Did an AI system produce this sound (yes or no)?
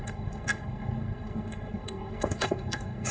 yes